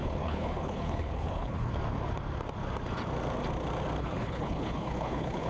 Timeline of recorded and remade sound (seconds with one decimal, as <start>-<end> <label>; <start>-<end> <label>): 0.0-1.7 remade; 1.7-4.0 recorded; 4.0-5.5 remade